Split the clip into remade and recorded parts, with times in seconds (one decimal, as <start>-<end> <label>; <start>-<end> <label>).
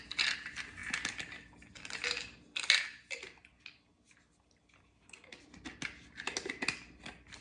0.0-7.4 recorded